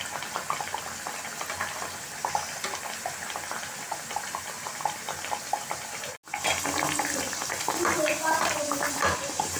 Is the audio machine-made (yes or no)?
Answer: no